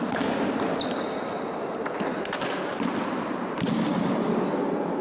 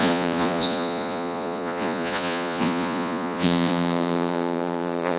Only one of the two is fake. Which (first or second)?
second